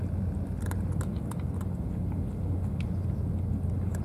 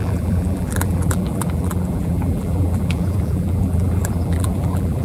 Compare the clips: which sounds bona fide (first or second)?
first